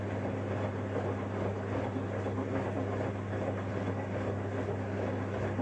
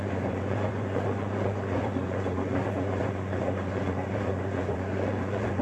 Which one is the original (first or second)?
first